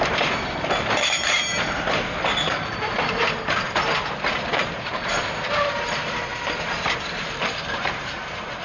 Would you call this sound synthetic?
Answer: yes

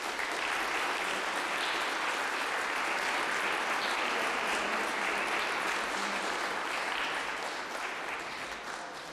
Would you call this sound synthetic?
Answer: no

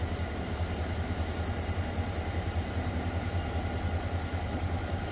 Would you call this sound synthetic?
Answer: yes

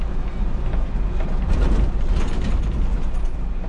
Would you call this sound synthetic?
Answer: no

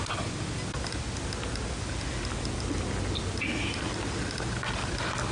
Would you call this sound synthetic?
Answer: no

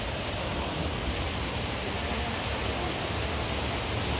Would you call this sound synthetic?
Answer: no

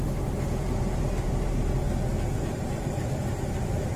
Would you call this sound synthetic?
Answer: no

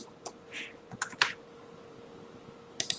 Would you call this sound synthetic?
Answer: no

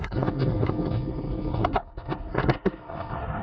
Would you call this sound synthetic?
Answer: yes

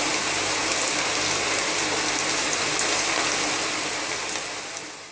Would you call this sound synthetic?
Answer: no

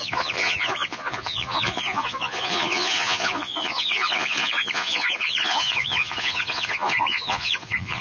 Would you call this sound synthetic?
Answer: yes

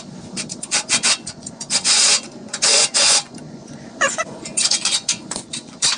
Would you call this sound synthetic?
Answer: yes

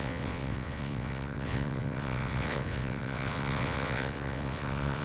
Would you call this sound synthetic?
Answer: yes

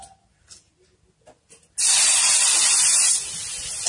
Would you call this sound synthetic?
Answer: no